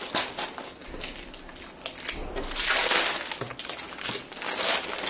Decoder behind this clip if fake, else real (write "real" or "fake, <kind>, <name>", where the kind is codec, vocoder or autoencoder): real